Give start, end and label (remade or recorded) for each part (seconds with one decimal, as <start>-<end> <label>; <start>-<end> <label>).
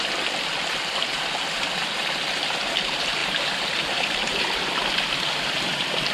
0.0-6.1 recorded